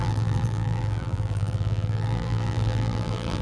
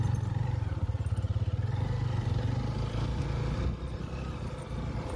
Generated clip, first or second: first